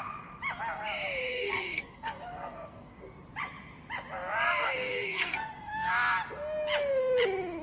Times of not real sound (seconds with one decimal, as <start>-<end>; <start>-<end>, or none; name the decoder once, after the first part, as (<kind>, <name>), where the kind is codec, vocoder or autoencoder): 1.3-3.0 (codec, SNAC); 4.6-5.9